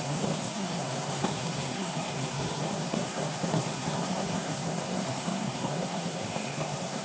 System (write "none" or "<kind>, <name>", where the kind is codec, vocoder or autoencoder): codec, SNAC